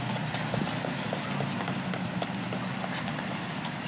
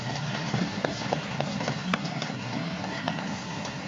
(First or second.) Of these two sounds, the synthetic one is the second